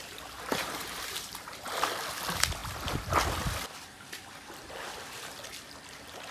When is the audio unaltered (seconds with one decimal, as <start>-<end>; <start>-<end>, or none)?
1.5-6.3